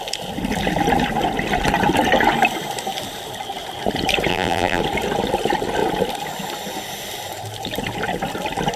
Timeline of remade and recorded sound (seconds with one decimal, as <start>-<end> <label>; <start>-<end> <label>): 0.0-4.3 recorded; 4.3-4.8 remade; 4.8-8.8 recorded